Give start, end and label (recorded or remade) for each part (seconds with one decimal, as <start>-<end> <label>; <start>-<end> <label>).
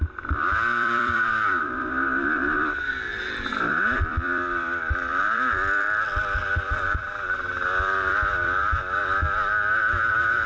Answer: 0.0-10.5 remade